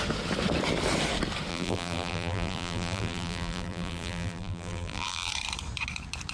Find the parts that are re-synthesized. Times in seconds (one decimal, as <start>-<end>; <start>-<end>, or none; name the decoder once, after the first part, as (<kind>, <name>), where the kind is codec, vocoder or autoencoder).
1.5-5.3 (vocoder, BigVGAN v2)